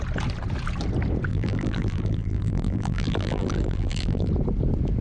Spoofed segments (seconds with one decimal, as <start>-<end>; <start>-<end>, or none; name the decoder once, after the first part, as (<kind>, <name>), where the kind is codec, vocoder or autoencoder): 1.3-4.3 (vocoder, BigVGAN v2)